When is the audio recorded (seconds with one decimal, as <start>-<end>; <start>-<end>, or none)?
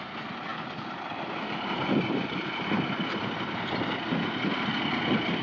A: 0.0-5.4